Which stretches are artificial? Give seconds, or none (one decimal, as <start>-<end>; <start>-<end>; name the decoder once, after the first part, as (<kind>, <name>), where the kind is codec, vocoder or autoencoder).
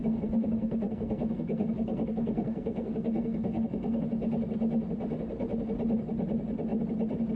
0.0-4.0 (codec, SNAC)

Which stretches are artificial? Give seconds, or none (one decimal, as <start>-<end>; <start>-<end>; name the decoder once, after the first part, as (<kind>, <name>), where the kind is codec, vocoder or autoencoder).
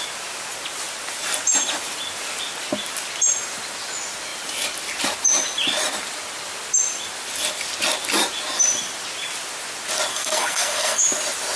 10.1-11.0 (codec, SNAC)